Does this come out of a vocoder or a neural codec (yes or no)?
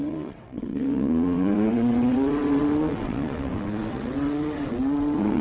yes